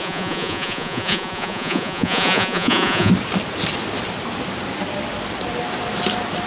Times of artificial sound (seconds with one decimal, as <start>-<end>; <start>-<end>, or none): 0.0-3.1